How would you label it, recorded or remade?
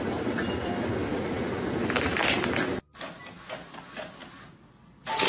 recorded